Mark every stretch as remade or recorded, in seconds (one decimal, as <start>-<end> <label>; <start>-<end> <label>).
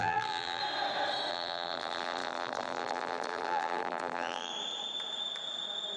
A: 0.0-0.6 remade; 0.6-1.3 recorded; 1.3-4.5 remade; 4.5-6.0 recorded